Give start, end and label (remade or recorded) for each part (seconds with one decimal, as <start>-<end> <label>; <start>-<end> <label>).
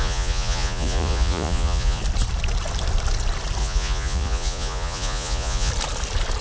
0.0-2.0 remade; 2.0-3.6 recorded; 3.6-5.7 remade; 5.7-6.4 recorded